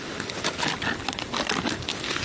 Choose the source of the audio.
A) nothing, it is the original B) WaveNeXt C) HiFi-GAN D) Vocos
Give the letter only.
A